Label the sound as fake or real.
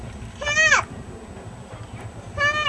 real